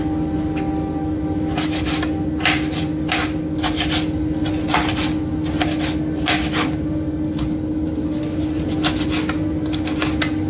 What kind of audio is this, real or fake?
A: real